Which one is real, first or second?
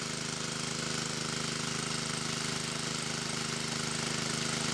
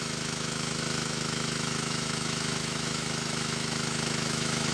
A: first